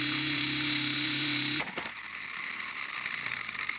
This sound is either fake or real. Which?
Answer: fake